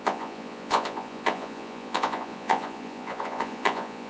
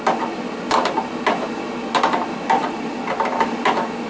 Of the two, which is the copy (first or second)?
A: first